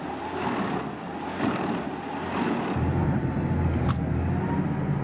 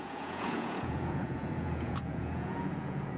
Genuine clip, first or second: first